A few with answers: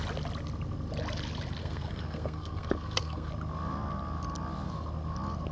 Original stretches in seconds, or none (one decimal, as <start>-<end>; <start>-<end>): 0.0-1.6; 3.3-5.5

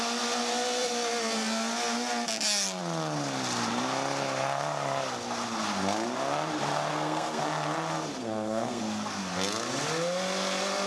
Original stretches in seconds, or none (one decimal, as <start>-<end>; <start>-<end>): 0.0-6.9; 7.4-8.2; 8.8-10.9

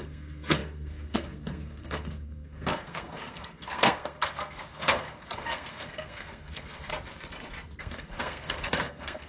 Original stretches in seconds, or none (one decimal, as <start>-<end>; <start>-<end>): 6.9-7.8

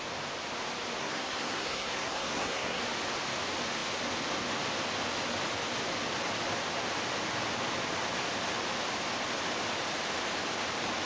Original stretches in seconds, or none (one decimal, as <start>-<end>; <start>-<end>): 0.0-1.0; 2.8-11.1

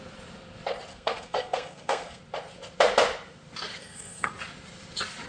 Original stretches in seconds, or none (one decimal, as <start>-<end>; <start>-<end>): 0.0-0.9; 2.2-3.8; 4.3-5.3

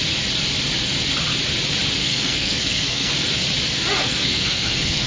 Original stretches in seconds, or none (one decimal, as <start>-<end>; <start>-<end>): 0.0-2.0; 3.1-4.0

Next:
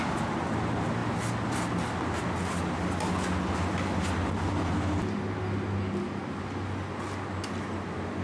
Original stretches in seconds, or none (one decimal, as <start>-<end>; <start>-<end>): 0.0-8.2

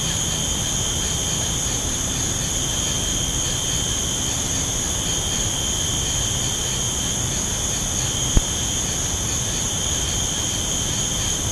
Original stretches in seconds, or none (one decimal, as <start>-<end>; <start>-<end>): 0.0-11.5